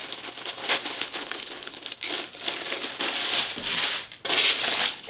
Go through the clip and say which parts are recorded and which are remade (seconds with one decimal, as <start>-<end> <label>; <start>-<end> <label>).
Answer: 0.0-1.0 recorded; 1.0-1.8 remade; 1.8-4.6 recorded; 4.6-5.1 remade